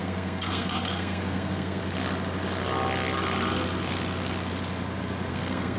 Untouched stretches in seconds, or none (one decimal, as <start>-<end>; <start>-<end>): 1.8-5.3